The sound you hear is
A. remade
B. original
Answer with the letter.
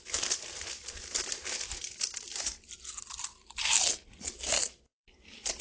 B